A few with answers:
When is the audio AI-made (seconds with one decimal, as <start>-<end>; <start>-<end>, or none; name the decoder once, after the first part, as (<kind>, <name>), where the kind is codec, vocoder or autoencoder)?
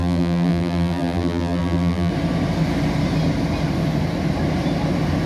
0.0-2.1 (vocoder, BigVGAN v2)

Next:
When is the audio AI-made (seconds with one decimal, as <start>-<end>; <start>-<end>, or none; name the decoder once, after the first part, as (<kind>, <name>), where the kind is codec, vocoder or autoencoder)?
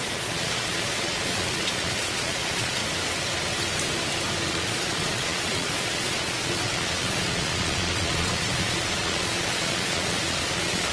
0.0-2.8 (vocoder, Vocos); 4.5-10.9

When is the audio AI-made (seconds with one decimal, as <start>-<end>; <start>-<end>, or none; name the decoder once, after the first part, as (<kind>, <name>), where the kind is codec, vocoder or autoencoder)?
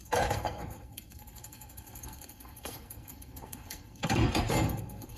0.0-5.2 (codec, SNAC)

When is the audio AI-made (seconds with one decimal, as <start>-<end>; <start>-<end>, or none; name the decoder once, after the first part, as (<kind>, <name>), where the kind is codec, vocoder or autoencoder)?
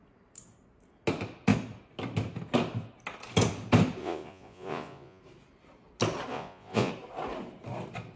4.0-5.2 (vocoder, Vocos); 6.3-6.9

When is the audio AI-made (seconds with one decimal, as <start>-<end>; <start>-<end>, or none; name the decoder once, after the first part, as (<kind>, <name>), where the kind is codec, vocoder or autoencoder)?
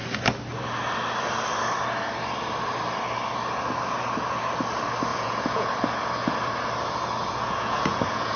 5.1-5.7 (vocoder, Vocos); 7.2-8.4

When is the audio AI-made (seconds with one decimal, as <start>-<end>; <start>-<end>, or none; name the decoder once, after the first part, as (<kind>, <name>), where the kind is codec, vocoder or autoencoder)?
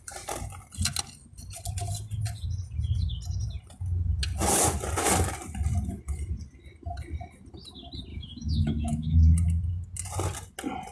8.1-9.2 (autoencoder, DAC-VAE)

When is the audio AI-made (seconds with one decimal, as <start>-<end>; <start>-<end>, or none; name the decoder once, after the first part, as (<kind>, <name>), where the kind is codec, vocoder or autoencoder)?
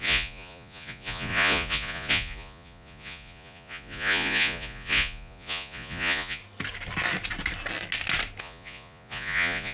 0.0-6.4 (vocoder, Vocos); 8.4-9.7